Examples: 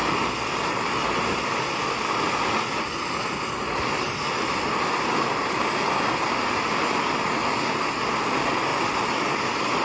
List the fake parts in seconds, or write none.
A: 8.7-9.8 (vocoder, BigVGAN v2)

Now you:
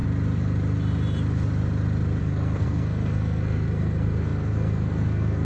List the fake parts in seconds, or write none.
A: 2.2-5.4 (codec, SNAC)